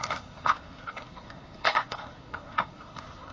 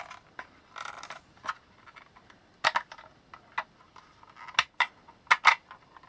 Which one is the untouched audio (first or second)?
second